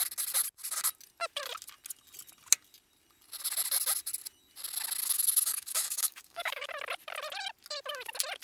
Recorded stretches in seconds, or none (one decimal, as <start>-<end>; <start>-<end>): 0.0-5.0; 6.7-8.4